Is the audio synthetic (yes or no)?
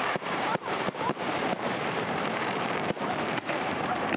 yes